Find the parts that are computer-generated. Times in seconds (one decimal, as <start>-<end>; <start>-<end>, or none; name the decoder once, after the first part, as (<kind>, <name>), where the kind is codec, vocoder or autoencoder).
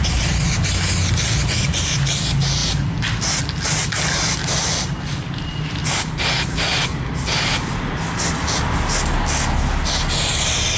none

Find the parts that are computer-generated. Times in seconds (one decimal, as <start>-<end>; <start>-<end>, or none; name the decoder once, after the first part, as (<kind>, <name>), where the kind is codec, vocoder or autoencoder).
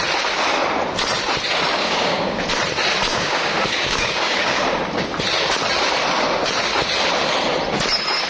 1.8-2.5 (codec, DAC); 3.1-4.6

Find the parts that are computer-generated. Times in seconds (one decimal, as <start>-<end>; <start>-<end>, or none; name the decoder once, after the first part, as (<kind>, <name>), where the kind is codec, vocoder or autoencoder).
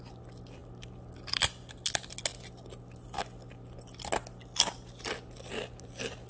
none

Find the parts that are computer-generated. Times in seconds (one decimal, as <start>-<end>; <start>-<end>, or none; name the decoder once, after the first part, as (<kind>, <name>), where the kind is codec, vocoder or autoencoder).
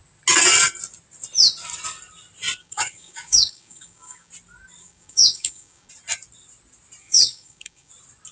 2.6-4.3 (codec, DAC); 4.8-5.9; 7.0-7.9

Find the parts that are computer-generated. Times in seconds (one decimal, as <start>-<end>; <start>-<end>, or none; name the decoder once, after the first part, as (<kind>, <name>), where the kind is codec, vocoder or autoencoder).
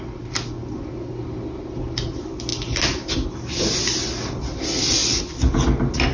none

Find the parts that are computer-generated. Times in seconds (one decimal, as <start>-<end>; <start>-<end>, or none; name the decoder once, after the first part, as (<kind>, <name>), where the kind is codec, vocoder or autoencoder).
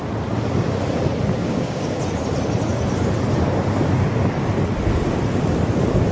1.4-2.0 (codec, DAC)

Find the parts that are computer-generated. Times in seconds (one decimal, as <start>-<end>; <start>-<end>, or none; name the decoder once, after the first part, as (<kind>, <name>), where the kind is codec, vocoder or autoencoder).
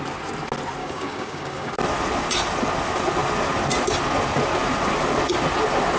0.8-1.7 (codec, DAC)